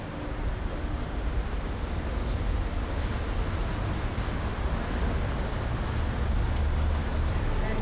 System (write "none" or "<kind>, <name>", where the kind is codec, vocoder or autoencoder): none